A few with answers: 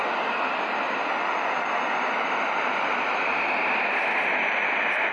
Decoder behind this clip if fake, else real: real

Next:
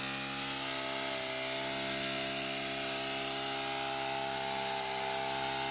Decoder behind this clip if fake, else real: real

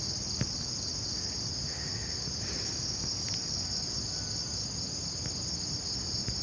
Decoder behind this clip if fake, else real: real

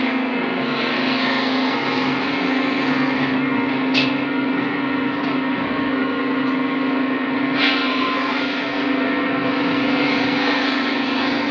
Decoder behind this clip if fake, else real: fake, codec, SNAC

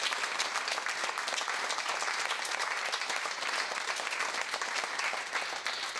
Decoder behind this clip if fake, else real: real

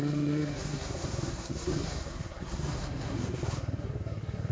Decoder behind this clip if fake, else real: fake, codec, SNAC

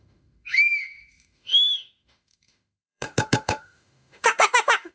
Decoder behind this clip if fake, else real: fake, autoencoder, DAC-VAE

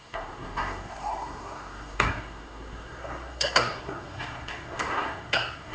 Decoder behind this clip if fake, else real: fake, codec, SNAC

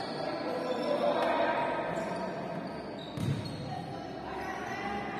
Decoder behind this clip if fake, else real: real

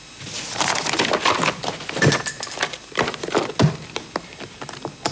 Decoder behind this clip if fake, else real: real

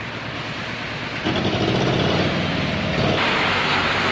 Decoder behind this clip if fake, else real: real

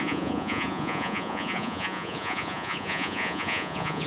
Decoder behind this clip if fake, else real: fake, vocoder, Vocos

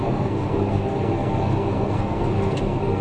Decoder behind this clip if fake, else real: fake, codec, SNAC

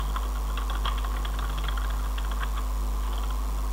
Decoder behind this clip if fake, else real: real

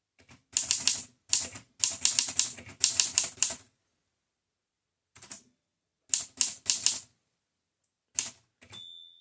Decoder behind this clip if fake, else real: real